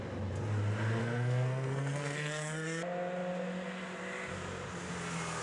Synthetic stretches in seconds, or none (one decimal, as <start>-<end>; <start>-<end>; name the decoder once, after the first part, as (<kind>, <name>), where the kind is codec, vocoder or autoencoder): 1.0-2.8 (codec, SNAC)